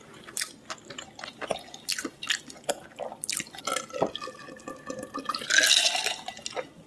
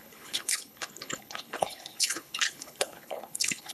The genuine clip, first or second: first